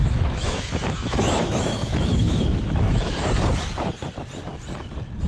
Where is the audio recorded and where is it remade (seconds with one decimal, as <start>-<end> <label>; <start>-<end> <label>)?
0.0-3.2 remade; 3.2-5.3 recorded